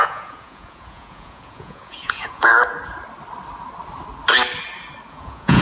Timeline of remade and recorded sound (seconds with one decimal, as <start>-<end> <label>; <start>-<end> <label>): 0.0-2.5 remade; 2.5-5.1 recorded; 5.1-5.6 remade